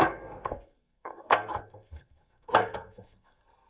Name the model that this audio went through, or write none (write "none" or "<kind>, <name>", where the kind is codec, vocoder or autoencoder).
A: codec, SNAC